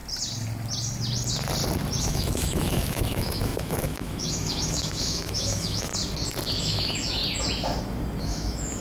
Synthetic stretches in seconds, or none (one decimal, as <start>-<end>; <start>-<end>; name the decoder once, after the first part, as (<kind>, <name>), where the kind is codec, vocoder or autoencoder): 2.0-5.9 (autoencoder, DAC-VAE); 6.6-7.2; 8.2-8.8